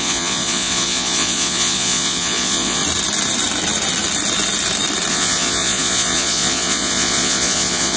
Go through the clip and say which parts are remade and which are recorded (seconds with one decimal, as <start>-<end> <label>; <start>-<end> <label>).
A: 0.0-2.8 remade; 2.8-5.1 recorded; 5.1-8.0 remade